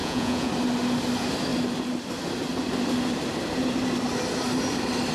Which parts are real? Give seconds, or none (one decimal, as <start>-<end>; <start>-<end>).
0.5-5.1